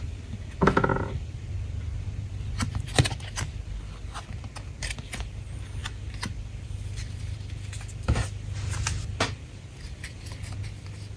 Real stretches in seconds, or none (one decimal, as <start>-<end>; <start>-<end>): 0.0-0.9; 1.5-5.8; 7.2-11.2